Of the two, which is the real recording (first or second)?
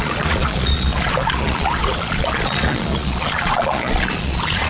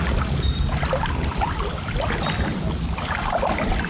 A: second